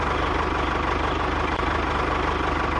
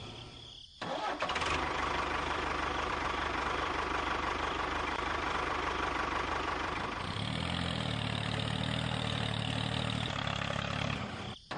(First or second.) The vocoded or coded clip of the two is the second